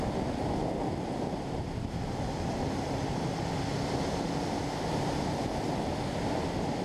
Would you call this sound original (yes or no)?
yes